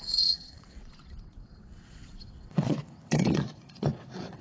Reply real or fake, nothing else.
fake